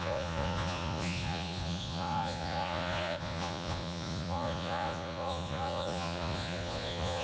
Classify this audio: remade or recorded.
remade